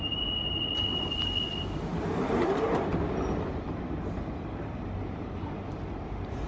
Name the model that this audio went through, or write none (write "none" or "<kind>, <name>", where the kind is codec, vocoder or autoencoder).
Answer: vocoder, BigVGAN v2